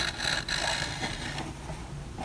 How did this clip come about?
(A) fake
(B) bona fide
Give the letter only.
B